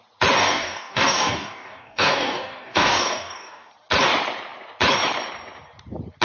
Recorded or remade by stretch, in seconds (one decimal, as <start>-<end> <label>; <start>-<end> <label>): 0.0-0.4 recorded; 0.4-3.7 remade; 3.7-6.2 recorded